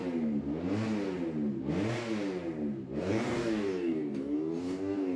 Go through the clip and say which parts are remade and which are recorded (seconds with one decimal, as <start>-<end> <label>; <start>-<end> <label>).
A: 0.0-3.0 recorded; 3.0-5.2 remade